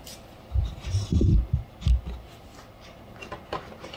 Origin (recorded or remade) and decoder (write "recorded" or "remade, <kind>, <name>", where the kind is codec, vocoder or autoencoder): recorded